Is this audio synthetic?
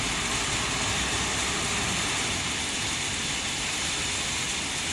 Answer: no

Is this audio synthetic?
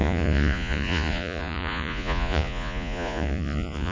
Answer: yes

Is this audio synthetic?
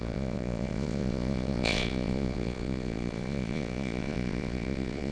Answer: yes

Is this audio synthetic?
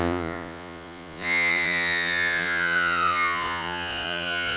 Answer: yes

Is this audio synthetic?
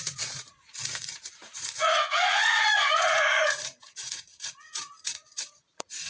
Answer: yes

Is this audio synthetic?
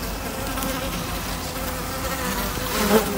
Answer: no